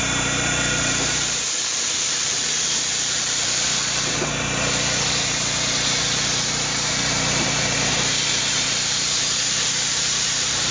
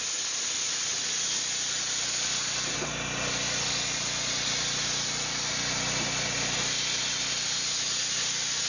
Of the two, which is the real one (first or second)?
second